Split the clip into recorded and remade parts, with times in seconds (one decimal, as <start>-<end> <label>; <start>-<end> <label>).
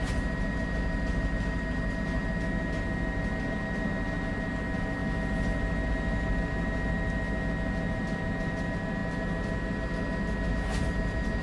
0.0-11.4 recorded